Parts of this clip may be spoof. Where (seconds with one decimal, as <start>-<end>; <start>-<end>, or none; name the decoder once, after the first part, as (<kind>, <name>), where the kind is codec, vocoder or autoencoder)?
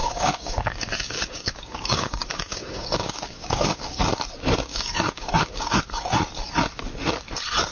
0.0-4.0 (codec, DAC); 4.7-5.8